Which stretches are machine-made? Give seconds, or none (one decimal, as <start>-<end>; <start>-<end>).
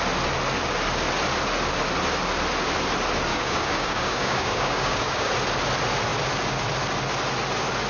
3.3-5.3